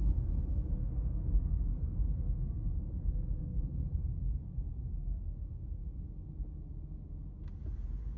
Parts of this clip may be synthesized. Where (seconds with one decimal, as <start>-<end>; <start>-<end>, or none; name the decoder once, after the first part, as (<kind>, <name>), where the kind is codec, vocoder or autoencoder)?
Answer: 0.8-2.7 (codec, SNAC); 3.4-4.1